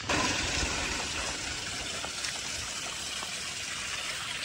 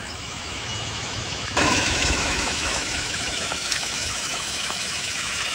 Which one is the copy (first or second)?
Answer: second